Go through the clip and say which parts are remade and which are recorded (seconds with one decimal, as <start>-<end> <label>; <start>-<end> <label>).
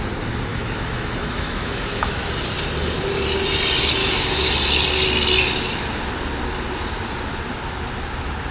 0.0-0.5 recorded; 0.5-2.2 remade; 2.2-4.0 recorded; 4.0-4.5 remade; 4.5-8.5 recorded